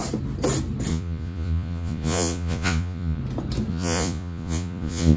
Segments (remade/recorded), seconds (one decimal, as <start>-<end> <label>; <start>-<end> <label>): 0.0-0.9 recorded; 0.9-3.2 remade; 3.2-3.7 recorded; 3.7-5.2 remade